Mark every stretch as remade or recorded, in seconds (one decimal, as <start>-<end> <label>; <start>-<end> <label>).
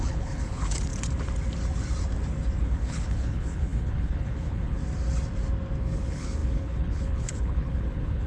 0.0-0.9 remade; 0.9-2.6 recorded; 2.6-4.8 remade; 4.8-5.8 recorded; 5.8-8.3 remade